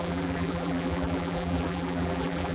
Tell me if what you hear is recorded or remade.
remade